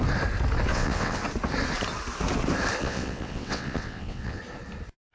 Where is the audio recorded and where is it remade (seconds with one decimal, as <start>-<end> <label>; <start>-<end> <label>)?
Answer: 0.0-0.7 recorded; 0.7-1.2 remade; 1.2-2.8 recorded; 2.8-4.4 remade; 4.4-5.1 recorded